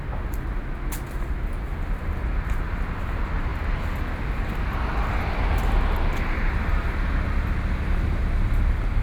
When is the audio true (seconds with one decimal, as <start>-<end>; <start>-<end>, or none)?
0.0-9.0